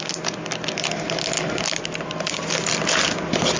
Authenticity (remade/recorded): recorded